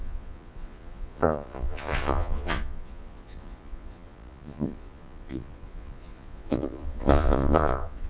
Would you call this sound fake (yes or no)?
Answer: yes